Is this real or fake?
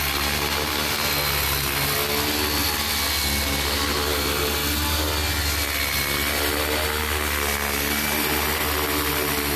real